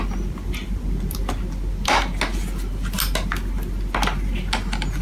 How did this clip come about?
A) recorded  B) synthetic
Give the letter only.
A